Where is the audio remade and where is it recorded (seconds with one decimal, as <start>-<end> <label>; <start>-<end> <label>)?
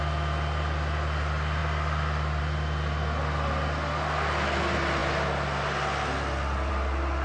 0.0-7.2 recorded